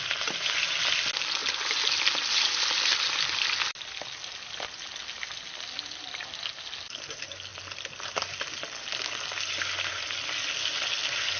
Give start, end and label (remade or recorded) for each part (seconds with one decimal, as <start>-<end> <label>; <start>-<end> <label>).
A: 0.0-11.4 recorded